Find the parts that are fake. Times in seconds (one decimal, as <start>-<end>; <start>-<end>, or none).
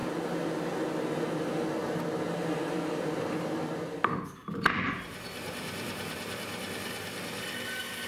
none